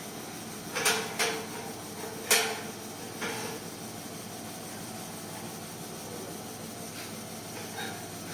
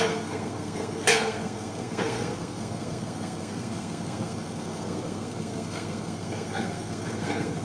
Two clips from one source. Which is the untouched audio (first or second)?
first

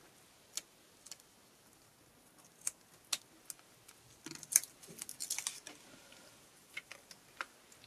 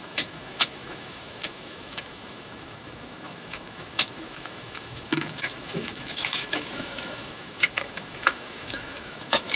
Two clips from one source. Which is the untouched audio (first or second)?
first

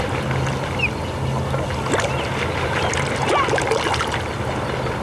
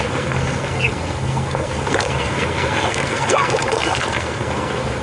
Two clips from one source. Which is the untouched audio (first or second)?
first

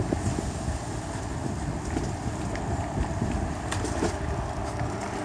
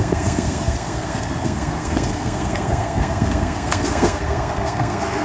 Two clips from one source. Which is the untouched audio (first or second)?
first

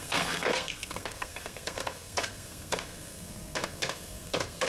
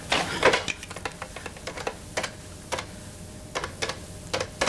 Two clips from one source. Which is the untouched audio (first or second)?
second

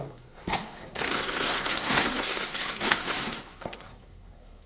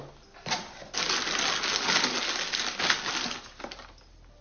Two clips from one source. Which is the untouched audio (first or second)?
second